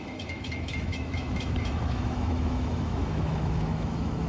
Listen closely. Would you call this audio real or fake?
fake